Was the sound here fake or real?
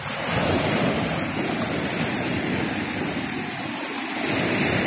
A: real